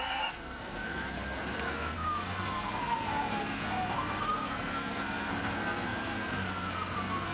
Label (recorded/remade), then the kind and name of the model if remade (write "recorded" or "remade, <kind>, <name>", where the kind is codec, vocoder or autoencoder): remade, codec, SNAC